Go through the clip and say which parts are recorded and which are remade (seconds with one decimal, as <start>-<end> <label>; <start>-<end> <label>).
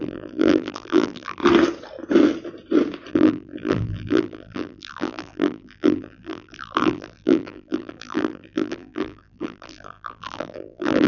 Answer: 0.0-1.4 remade; 1.4-3.1 recorded; 3.1-11.1 remade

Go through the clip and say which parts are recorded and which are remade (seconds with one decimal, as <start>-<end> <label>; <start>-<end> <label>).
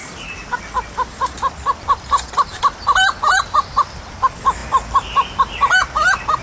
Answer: 0.0-6.4 recorded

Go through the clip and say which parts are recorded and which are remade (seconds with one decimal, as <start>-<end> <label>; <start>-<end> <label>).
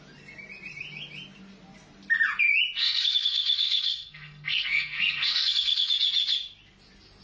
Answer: 0.0-2.8 recorded; 2.8-5.9 remade; 5.9-7.2 recorded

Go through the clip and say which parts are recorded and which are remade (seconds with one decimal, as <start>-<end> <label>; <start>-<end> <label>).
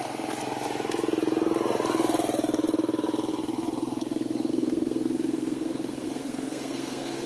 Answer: 0.0-4.5 recorded; 4.5-7.3 remade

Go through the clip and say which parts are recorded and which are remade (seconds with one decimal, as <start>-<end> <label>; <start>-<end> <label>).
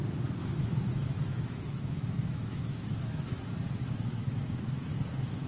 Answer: 0.0-0.4 recorded; 0.4-3.4 remade; 3.4-3.8 recorded; 3.8-5.5 remade